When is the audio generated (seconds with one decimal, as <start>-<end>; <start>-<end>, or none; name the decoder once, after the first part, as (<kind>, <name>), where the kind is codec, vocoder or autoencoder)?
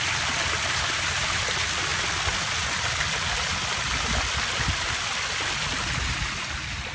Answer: none